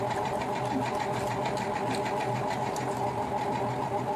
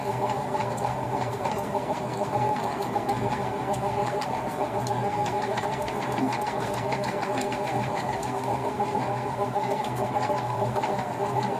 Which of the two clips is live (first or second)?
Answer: first